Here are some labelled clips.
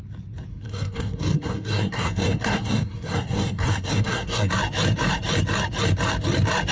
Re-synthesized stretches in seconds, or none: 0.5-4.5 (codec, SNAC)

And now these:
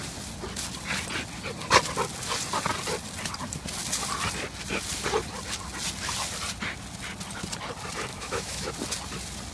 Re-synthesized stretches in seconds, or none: 8.1-8.7 (autoencoder, DAC-VAE)

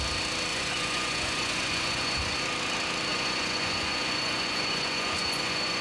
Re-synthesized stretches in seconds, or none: 0.5-2.4 (vocoder, Vocos); 3.1-5.8

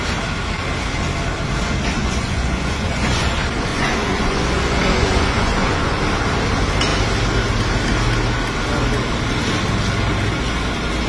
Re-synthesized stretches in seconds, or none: 2.0-3.3 (vocoder, Vocos); 3.7-6.0

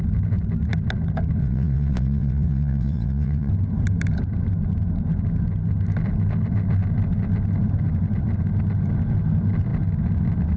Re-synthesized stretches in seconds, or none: 1.4-3.5 (vocoder, WaveNeXt)

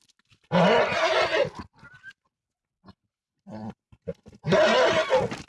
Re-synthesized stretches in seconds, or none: none